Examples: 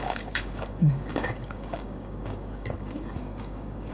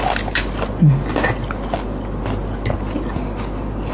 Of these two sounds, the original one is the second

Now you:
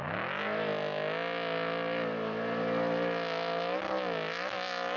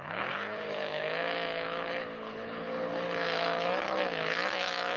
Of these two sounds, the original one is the first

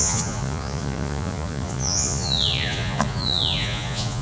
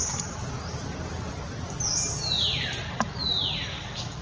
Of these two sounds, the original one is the second